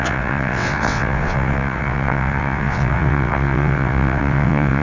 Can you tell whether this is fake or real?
fake